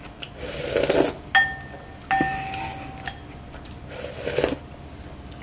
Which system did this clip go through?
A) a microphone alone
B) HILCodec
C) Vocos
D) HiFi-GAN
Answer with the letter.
A